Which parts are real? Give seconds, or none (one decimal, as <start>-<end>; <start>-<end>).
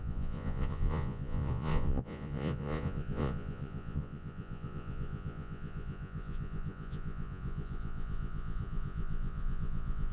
none